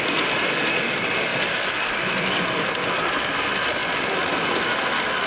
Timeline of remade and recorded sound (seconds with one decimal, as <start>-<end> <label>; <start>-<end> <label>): 0.0-1.3 recorded; 1.3-3.2 remade; 3.2-5.3 recorded